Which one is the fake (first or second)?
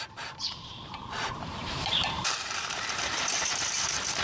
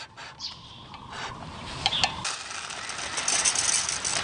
first